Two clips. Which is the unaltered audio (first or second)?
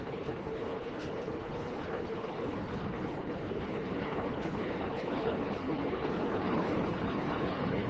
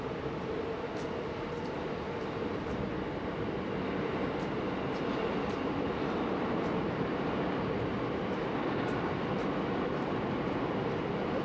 second